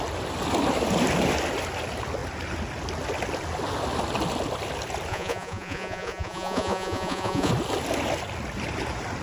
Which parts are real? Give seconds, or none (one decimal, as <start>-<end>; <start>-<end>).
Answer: 0.0-5.1; 7.5-9.2